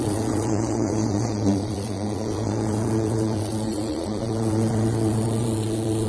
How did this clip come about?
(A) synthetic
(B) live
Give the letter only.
A